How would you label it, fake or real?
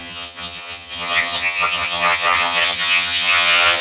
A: fake